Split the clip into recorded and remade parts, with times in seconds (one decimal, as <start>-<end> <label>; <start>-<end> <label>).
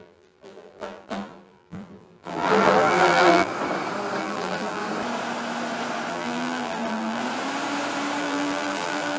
0.0-3.5 remade; 3.5-4.2 recorded; 4.2-4.8 remade; 4.8-6.1 recorded; 6.1-7.2 remade; 7.2-8.2 recorded; 8.2-9.2 remade